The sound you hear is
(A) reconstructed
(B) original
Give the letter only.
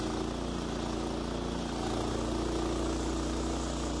B